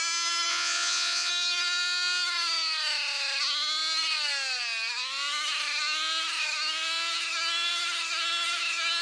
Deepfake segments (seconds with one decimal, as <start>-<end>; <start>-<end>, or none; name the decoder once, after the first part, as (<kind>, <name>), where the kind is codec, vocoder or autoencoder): 0.5-1.3 (vocoder, Vocos)